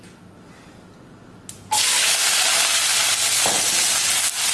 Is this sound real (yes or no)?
yes